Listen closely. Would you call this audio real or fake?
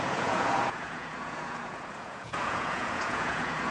fake